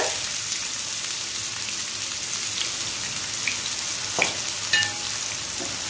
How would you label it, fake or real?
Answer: real